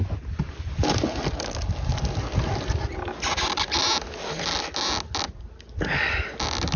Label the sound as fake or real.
real